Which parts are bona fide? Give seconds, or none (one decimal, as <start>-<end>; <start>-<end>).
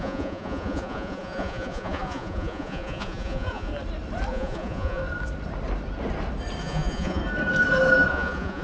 3.7-4.3; 5.0-6.6; 7.2-8.1